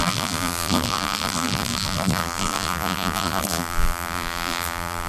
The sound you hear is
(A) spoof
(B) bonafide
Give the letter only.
A